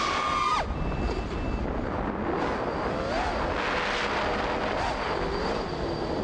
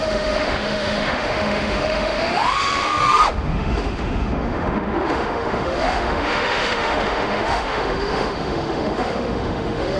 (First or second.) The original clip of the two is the first